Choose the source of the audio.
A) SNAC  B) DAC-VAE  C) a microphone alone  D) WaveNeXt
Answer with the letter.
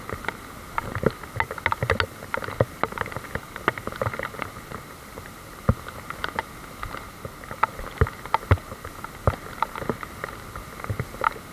C